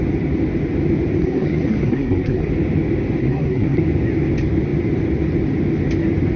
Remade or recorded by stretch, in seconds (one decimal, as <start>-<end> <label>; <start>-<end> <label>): 0.0-1.2 recorded; 1.2-2.5 remade; 2.5-3.2 recorded; 3.2-3.8 remade; 3.8-6.4 recorded